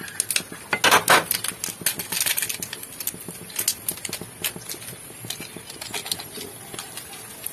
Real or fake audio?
real